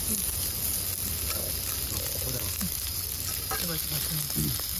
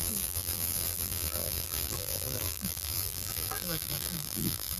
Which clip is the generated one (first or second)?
second